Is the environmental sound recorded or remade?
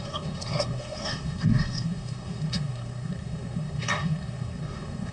remade